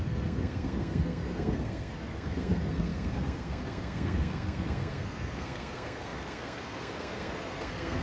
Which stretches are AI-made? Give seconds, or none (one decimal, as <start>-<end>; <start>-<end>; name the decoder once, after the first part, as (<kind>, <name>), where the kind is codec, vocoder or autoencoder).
0.0-8.0 (codec, SNAC)